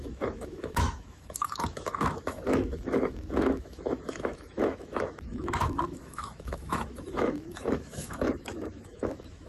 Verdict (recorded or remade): remade